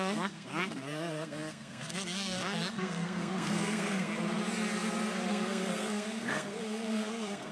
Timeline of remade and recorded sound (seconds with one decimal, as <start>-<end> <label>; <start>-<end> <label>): 0.0-4.1 remade; 4.1-5.3 recorded; 5.3-7.5 remade